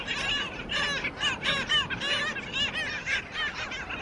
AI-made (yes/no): no